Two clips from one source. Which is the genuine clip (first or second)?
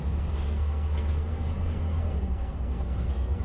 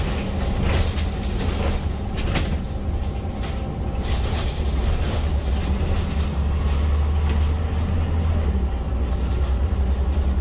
second